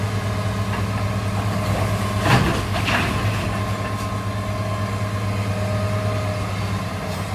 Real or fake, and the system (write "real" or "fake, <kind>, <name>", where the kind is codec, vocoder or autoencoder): real